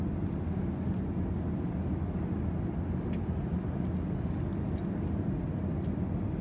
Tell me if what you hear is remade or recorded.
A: recorded